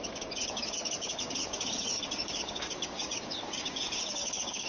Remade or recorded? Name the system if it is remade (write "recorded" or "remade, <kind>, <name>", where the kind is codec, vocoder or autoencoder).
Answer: remade, codec, DAC